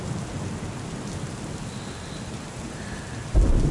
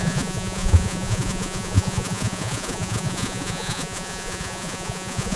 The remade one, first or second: second